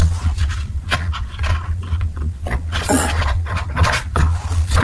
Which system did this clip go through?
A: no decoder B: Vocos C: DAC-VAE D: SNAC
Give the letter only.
B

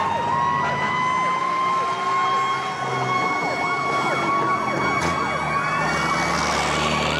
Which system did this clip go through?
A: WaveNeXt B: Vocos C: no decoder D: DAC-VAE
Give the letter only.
C